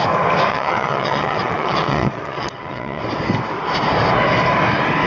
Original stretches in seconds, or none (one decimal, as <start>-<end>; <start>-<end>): 0.0-0.5; 3.0-5.1